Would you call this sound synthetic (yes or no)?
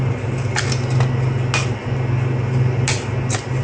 no